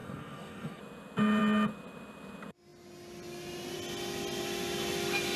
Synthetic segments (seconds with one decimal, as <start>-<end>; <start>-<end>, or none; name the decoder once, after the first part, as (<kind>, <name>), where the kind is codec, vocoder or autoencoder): 0.0-0.8 (codec, DAC)